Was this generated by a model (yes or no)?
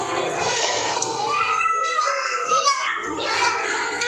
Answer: yes